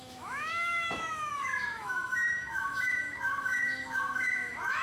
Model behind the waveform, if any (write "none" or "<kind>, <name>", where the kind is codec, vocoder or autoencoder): autoencoder, DAC-VAE